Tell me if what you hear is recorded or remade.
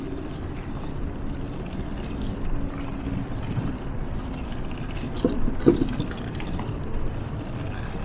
recorded